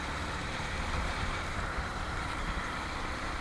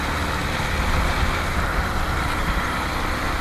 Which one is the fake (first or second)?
first